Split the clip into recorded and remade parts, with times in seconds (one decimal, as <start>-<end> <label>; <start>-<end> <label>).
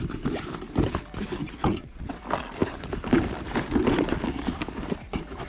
0.0-1.4 recorded; 1.4-2.2 remade; 2.2-5.5 recorded